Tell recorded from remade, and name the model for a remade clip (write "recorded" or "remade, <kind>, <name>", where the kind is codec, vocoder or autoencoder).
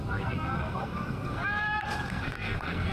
remade, codec, SNAC